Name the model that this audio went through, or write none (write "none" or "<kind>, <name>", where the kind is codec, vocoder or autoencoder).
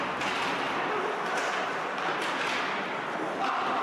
none